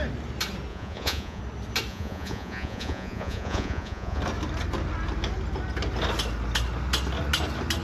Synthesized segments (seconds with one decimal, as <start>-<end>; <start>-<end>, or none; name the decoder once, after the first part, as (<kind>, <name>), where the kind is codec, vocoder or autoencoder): 0.7-1.4 (vocoder, Vocos); 1.9-4.2